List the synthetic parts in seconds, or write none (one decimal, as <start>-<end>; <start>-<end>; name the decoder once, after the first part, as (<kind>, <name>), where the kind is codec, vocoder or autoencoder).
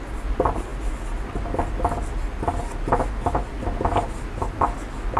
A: none